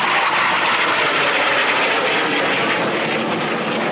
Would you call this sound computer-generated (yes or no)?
no